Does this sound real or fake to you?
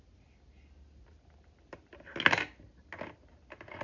real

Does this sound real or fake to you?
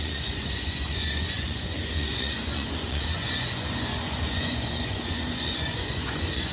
fake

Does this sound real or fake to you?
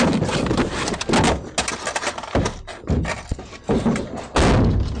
real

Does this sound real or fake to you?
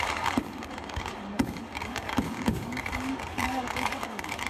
fake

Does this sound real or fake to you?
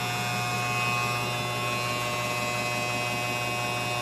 real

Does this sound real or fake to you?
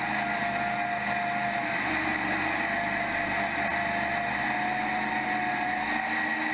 real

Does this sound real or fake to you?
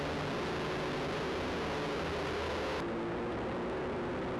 real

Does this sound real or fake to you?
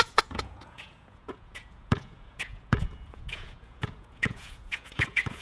fake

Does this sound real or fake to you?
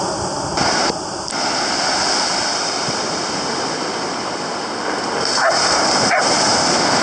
real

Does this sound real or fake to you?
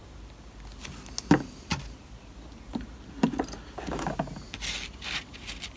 real